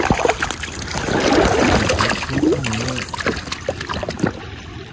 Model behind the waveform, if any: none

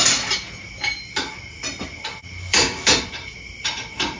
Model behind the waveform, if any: none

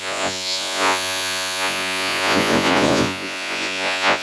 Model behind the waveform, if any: vocoder, Vocos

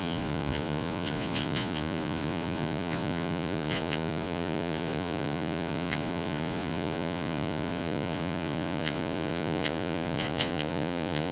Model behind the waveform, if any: vocoder, Vocos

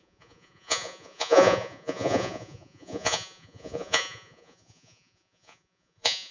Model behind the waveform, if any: vocoder, Vocos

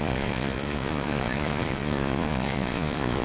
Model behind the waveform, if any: vocoder, Vocos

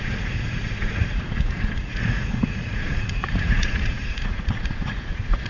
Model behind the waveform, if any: vocoder, Vocos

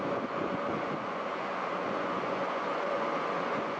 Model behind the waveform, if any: vocoder, Vocos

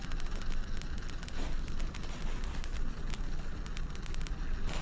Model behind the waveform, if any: none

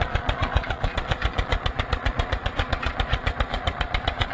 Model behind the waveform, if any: vocoder, Vocos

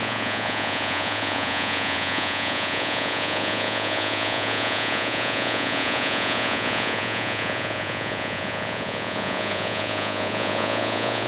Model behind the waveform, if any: vocoder, Vocos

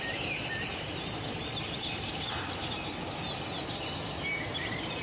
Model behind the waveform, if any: none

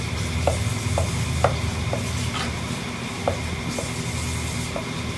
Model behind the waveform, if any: none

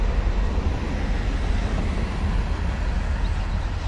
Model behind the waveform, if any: none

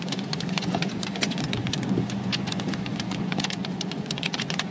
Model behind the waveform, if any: vocoder, Vocos